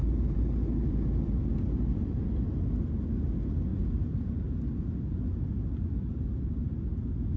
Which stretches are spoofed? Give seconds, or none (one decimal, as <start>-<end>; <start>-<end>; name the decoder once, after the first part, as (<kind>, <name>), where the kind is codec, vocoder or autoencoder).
none